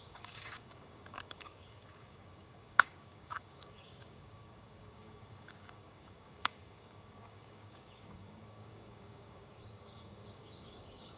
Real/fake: fake